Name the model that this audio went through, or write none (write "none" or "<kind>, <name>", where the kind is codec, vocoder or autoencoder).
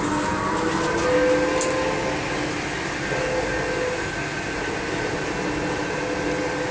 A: none